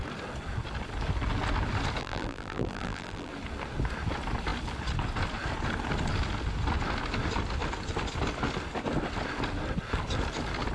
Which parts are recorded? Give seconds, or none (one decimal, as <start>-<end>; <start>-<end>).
0.0-2.0; 3.3-10.7

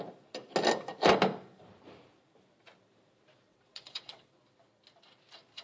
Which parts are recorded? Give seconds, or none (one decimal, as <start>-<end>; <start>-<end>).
0.0-3.5; 4.3-5.6

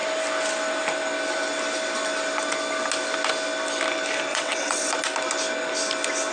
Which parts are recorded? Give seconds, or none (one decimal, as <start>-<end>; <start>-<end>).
0.0-4.3; 4.9-6.3